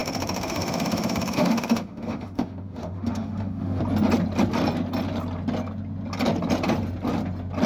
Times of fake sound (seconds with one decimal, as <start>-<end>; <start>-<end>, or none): 0.0-3.8